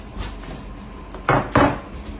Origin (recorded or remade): recorded